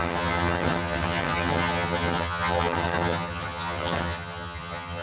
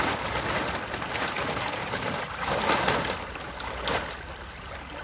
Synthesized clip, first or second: first